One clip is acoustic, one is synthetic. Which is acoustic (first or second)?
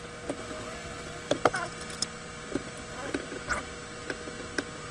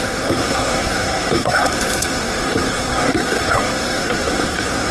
first